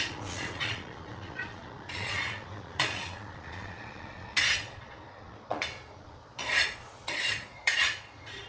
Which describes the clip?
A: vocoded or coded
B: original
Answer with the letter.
A